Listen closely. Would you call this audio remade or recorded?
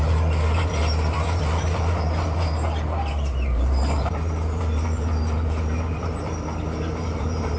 remade